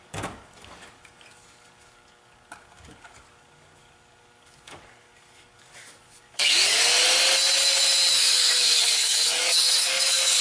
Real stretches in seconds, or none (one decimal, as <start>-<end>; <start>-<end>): 6.9-8.1